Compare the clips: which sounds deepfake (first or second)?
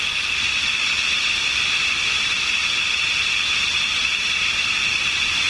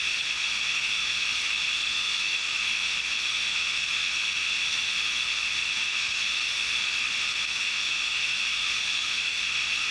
second